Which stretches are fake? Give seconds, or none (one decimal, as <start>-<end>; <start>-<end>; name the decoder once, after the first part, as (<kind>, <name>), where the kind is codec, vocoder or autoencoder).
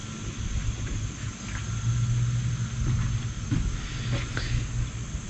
none